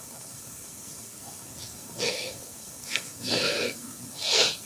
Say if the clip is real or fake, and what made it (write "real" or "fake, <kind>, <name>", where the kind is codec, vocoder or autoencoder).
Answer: fake, codec, SNAC